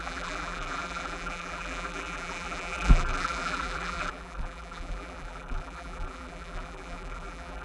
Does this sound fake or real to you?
fake